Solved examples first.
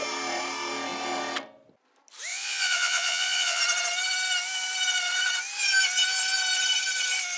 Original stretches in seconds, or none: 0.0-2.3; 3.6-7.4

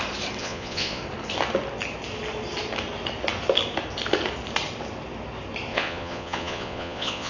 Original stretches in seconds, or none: 0.0-0.4; 1.0-5.7